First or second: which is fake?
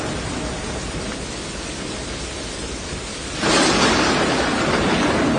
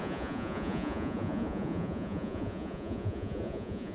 second